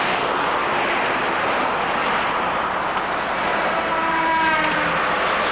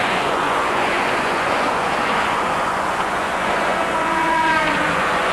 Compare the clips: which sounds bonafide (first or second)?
first